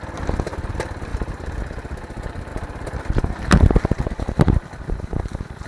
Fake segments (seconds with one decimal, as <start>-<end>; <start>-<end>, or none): 1.1-1.6